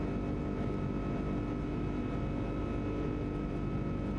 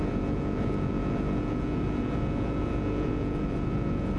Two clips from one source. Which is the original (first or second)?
first